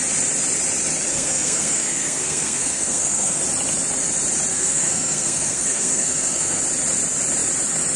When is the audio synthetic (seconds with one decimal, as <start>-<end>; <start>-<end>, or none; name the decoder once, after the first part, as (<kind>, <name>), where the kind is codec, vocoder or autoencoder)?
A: 1.1-3.4 (codec, SNAC); 4.5-6.6